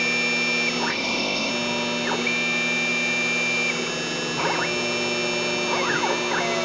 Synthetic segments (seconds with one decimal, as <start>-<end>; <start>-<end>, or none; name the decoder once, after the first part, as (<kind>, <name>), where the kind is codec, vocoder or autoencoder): 0.9-1.5 (codec, ZipCodec)